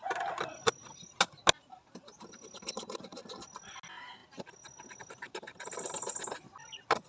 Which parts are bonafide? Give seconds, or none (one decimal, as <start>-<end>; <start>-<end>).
0.0-7.1